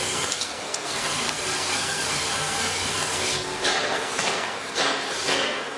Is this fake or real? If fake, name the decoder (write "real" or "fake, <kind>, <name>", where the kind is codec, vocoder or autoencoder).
fake, codec, SNAC